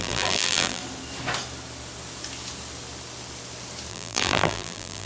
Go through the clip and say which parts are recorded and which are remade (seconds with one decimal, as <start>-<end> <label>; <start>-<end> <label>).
0.0-0.8 remade; 0.8-3.9 recorded; 3.9-5.1 remade